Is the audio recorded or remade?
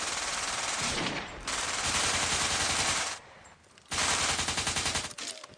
remade